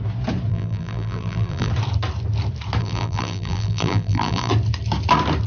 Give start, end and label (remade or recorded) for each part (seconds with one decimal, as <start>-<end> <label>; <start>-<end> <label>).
0.0-0.5 recorded; 0.5-1.7 remade; 1.7-2.8 recorded; 2.8-4.5 remade; 4.5-5.5 recorded